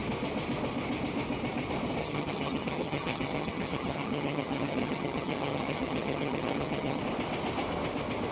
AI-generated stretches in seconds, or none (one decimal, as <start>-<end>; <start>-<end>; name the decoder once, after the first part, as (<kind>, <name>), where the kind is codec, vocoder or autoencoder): 2.0-7.0 (vocoder, HiFi-GAN)